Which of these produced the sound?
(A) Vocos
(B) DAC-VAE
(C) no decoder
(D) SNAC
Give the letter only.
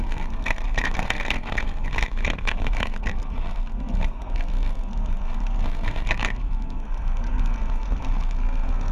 D